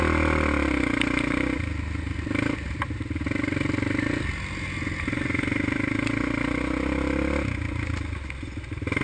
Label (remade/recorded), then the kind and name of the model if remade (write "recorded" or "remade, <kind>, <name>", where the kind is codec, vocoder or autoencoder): recorded